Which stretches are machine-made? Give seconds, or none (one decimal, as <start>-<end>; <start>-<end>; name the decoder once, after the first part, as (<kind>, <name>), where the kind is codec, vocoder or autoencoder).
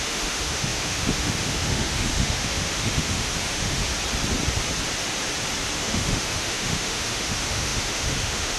0.0-3.8 (autoencoder, DAC-VAE); 5.7-8.6